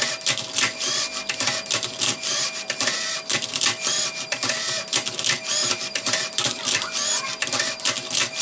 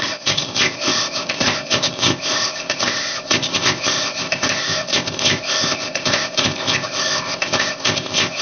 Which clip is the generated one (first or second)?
second